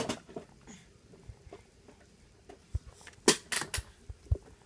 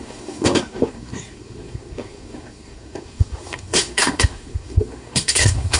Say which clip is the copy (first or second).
second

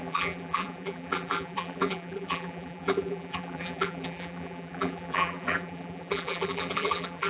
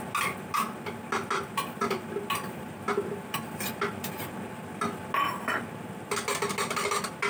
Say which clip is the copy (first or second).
first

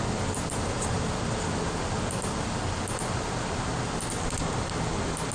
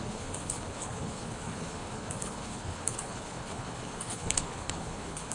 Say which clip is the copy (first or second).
second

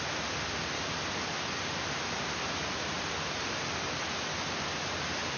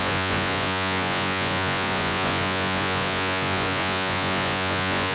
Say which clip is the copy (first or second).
second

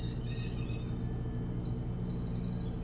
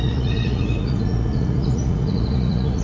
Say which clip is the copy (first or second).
second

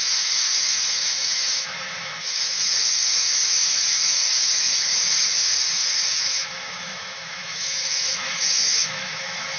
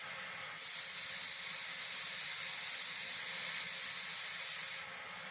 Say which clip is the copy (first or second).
first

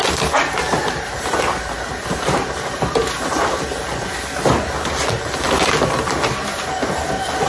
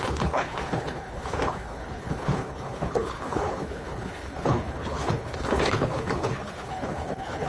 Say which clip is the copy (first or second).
second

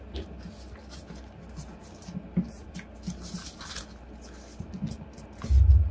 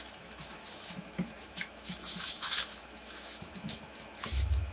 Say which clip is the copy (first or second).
second